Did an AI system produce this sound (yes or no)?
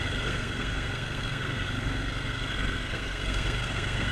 yes